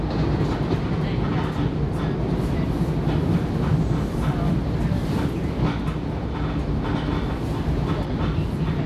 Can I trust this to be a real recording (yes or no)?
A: yes